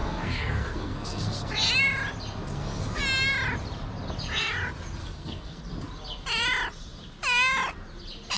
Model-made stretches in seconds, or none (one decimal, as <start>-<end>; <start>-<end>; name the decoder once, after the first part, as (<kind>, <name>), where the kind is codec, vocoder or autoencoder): 0.0-1.5 (codec, SNAC); 2.5-3.0; 5.0-5.6